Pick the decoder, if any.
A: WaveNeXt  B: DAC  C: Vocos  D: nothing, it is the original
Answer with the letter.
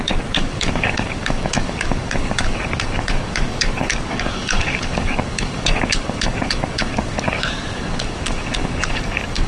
B